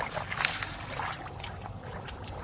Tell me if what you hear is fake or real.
real